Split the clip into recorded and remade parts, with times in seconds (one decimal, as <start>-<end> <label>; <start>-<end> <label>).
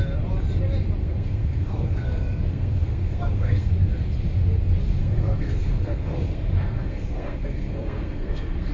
0.0-1.0 recorded; 1.0-3.7 remade; 3.7-5.0 recorded; 5.0-8.7 remade